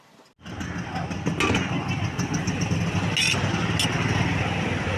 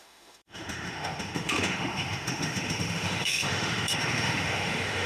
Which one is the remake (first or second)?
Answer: second